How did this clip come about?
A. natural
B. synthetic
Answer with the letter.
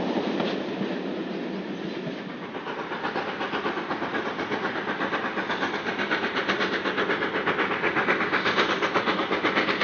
A